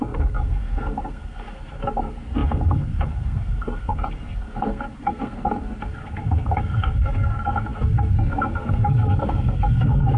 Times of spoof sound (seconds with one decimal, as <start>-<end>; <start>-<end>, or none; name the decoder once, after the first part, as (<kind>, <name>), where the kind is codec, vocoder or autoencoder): 0.0-10.2 (codec, SNAC)